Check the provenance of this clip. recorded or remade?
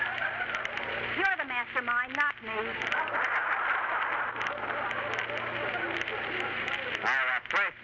recorded